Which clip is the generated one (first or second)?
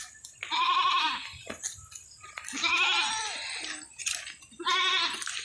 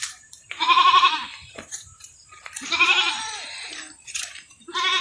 second